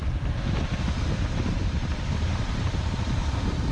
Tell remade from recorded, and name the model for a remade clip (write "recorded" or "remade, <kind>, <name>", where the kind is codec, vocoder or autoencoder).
remade, vocoder, BigVGAN v2